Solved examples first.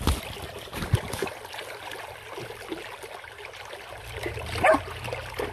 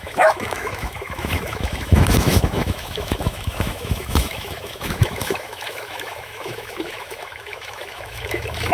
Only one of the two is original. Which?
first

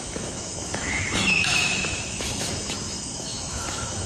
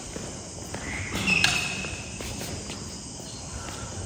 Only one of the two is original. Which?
second